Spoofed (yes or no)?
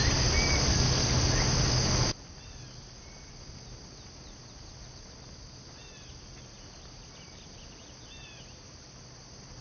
no